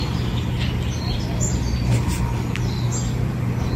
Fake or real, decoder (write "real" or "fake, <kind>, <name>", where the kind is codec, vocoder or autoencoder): real